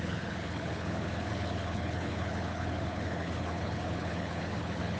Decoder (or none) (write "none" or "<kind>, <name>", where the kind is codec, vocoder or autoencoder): codec, HILCodec